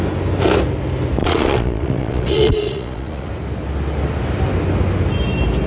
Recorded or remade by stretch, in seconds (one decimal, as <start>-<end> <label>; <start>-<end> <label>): 0.0-1.2 recorded; 1.2-3.3 remade; 3.3-5.7 recorded